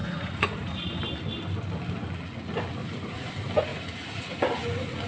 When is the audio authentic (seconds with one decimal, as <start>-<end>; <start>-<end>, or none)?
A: 1.0-2.8; 3.3-3.7; 4.4-5.1